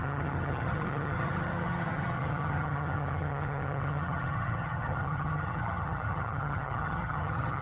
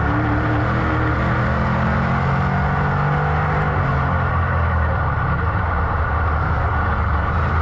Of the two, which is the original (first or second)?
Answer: second